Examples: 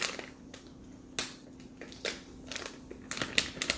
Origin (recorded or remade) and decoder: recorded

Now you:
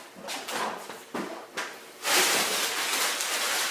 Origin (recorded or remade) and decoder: recorded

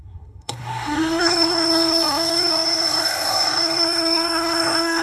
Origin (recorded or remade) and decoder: remade, codec, SNAC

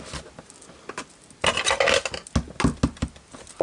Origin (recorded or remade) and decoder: recorded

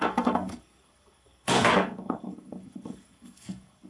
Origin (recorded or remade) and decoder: remade, codec, SNAC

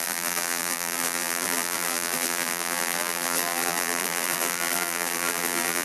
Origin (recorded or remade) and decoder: remade, vocoder, BigVGAN v2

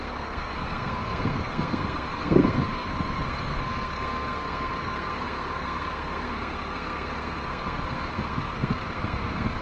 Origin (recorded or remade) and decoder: remade, codec, SNAC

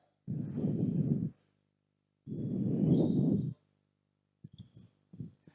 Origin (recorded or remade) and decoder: recorded